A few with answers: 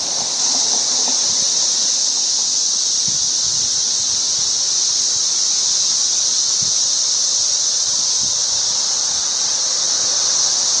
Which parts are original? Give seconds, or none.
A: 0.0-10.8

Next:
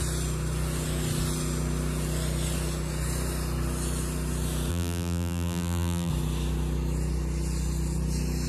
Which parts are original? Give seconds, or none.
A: 0.0-4.7; 6.1-8.5

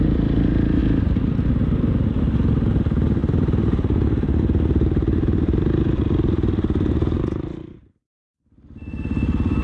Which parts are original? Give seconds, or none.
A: 0.8-2.1

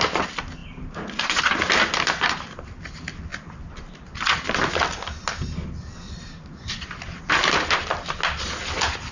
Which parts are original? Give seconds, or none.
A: 0.0-9.1

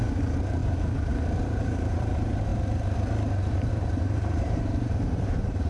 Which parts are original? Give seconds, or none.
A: 2.5-3.7

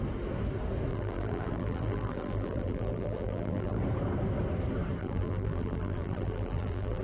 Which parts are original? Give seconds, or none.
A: 0.0-0.9; 3.8-5.0